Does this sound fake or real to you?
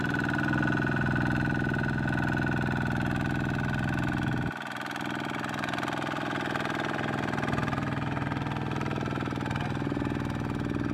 real